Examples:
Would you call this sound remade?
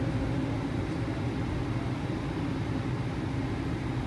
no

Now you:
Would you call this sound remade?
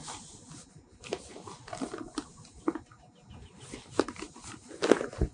no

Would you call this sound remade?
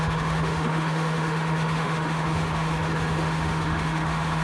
yes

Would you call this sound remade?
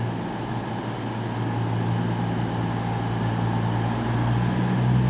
no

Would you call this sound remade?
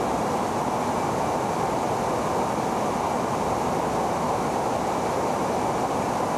no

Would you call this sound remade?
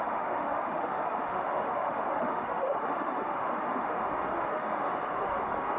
yes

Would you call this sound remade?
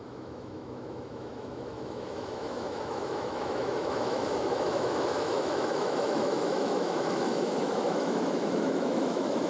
yes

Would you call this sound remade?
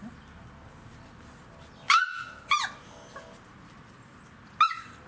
no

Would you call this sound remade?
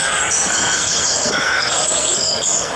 yes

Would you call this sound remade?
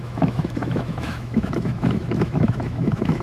yes